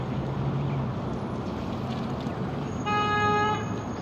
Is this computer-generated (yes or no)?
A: no